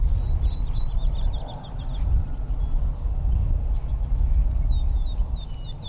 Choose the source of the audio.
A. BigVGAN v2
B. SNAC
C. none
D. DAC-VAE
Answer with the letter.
C